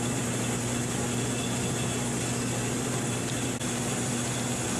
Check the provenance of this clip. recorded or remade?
recorded